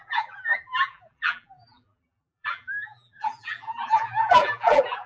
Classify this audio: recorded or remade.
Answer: remade